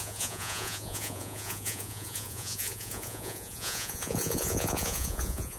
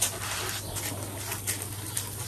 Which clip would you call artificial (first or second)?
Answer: first